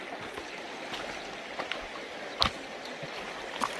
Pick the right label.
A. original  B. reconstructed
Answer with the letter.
A